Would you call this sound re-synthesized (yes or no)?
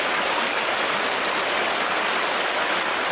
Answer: no